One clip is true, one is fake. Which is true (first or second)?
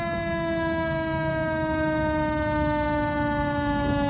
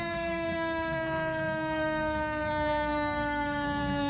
first